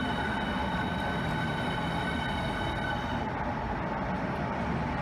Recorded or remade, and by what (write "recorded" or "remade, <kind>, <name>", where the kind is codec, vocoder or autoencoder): recorded